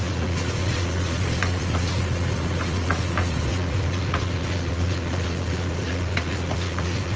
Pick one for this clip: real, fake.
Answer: fake